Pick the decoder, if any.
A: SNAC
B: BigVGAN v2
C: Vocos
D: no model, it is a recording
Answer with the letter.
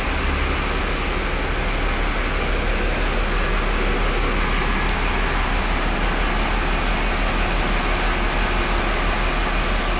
D